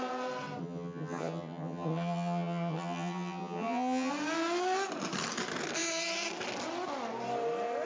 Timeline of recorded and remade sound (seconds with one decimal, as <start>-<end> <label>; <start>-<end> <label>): 0.0-0.6 recorded; 0.6-4.1 remade; 4.1-7.9 recorded